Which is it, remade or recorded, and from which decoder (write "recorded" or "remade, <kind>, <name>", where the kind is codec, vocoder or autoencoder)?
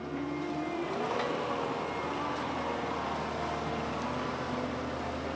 recorded